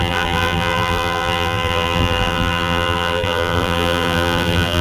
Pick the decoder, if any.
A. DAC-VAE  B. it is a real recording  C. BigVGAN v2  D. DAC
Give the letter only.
C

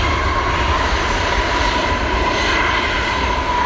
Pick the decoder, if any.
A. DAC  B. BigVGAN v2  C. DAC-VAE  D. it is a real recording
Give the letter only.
B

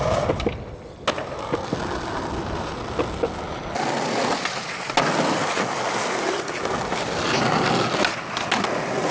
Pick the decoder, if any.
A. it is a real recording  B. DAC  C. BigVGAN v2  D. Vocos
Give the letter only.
A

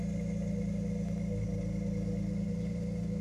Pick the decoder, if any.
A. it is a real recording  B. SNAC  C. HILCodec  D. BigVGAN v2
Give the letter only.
A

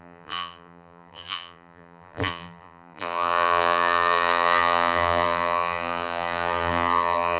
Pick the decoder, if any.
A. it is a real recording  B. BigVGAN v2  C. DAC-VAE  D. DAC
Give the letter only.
B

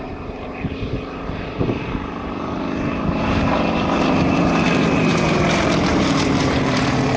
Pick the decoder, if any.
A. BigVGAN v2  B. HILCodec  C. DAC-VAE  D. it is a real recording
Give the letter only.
A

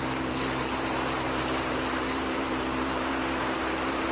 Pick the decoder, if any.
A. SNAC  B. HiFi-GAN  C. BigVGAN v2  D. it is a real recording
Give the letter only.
C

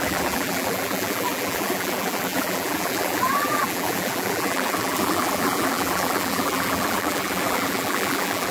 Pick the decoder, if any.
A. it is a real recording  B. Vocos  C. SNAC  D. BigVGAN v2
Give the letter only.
D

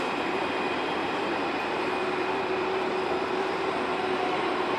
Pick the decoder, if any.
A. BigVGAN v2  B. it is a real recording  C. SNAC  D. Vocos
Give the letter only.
A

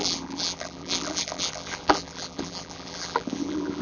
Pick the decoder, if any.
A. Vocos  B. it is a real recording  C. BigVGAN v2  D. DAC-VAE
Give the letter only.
C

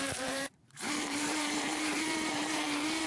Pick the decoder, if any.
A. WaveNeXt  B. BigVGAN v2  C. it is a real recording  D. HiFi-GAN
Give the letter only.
B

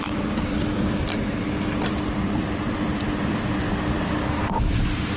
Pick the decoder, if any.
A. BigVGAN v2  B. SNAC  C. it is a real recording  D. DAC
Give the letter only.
A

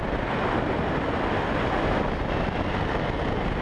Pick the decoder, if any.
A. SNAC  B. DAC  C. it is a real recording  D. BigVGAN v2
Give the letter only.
C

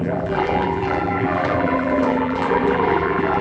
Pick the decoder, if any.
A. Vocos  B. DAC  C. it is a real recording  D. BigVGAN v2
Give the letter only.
D